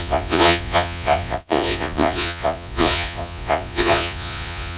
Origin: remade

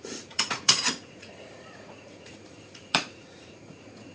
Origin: remade